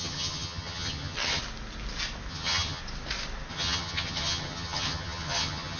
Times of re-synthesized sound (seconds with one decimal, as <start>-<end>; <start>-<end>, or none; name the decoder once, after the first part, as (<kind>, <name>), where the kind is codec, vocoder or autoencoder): 0.0-1.4 (vocoder, HiFi-GAN); 2.3-2.8; 3.5-5.8